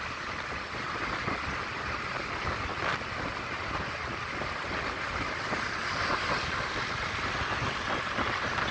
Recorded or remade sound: recorded